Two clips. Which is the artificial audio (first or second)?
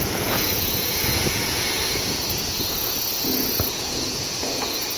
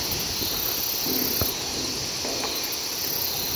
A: first